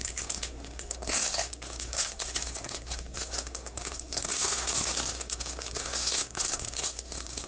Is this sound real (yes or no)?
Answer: no